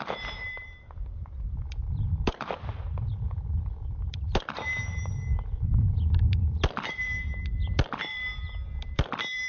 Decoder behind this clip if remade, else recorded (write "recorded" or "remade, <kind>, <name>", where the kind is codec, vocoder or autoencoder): remade, vocoder, BigVGAN v2